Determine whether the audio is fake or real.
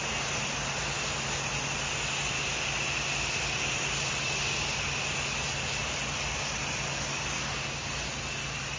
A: real